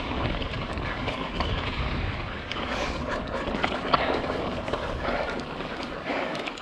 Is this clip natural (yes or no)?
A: no